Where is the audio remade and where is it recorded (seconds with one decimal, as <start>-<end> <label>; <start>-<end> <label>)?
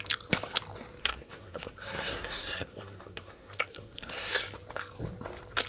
0.0-1.0 recorded; 1.0-4.4 remade; 4.4-5.7 recorded